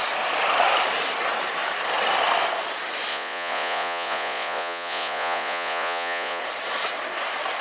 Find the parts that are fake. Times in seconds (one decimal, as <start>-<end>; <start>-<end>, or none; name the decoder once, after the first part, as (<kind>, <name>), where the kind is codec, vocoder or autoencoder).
3.1-6.4 (vocoder, Vocos)